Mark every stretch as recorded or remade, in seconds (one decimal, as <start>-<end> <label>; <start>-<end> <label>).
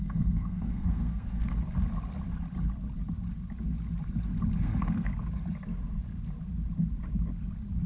0.0-1.5 remade; 1.5-4.6 recorded; 4.6-5.1 remade; 5.1-7.9 recorded